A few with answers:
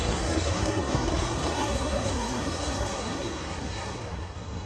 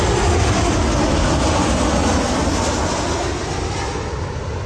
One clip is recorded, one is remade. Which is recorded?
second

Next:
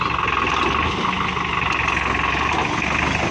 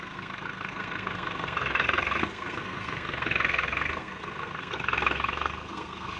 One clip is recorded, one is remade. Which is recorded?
first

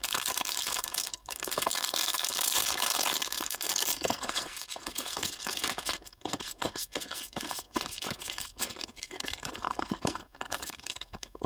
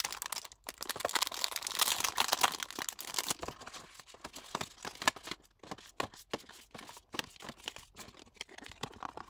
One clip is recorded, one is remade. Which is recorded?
second